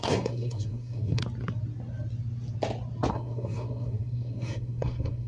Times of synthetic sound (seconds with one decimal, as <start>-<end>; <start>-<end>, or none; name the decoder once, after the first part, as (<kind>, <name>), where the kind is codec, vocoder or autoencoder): 0.0-1.2 (codec, SNAC); 3.1-5.3